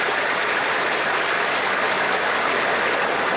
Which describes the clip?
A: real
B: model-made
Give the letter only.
A